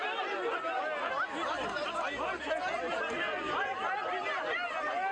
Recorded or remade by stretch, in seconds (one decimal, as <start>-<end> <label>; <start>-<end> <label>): 0.0-5.1 recorded